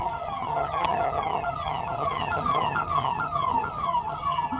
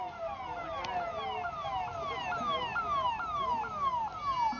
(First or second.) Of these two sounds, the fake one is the first